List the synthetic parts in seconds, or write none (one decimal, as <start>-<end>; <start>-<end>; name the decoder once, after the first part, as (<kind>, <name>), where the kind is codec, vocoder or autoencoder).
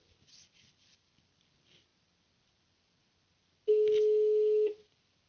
none